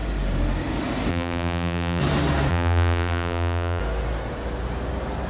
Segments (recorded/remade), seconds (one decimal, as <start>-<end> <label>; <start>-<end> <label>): 0.0-1.1 recorded; 1.1-2.0 remade; 2.0-2.5 recorded; 2.5-3.8 remade; 3.8-5.3 recorded